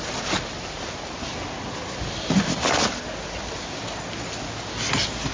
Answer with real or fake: real